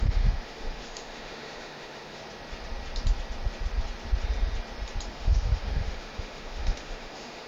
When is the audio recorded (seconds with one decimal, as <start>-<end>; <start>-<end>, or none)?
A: 2.2-5.1